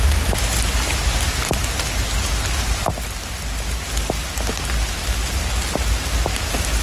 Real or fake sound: real